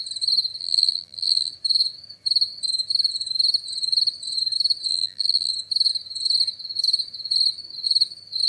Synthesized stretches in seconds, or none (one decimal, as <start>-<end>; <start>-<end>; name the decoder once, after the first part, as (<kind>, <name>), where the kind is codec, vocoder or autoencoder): 0.6-1.5 (vocoder, BigVGAN v2); 4.9-5.5